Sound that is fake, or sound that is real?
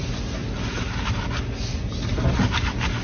real